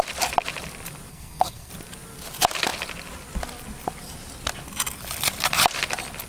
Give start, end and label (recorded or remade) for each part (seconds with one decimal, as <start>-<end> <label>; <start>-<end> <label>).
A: 0.0-1.1 recorded; 1.1-1.7 remade; 1.7-6.3 recorded

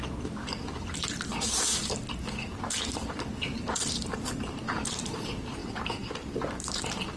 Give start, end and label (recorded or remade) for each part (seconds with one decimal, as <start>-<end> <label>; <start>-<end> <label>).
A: 0.0-7.2 remade